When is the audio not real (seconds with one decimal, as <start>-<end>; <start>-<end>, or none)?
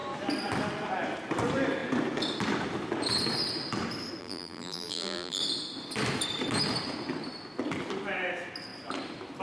4.2-5.4